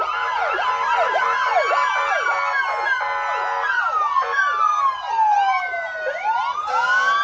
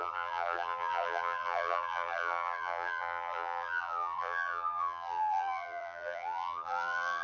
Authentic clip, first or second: first